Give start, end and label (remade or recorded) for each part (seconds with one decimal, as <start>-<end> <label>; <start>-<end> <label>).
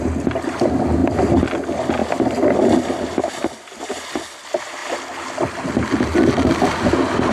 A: 0.0-7.3 recorded